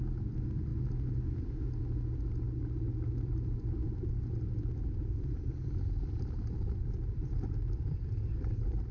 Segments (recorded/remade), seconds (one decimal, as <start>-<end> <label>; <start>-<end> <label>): 0.0-0.7 remade; 0.7-3.2 recorded; 3.2-8.9 remade